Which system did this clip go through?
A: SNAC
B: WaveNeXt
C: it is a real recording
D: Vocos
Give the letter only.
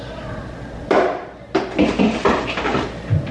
C